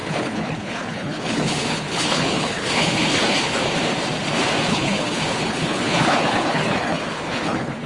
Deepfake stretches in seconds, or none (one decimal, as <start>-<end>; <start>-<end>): 0.0-3.7; 4.7-7.9